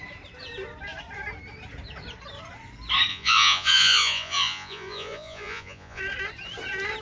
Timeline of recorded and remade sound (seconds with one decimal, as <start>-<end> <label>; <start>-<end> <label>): 0.0-3.1 recorded; 3.1-6.0 remade; 6.0-7.0 recorded